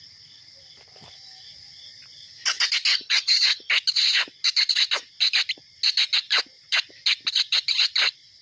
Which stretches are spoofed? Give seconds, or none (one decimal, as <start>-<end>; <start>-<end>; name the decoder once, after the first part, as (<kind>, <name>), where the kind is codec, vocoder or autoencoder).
2.9-3.7 (vocoder, HiFi-GAN)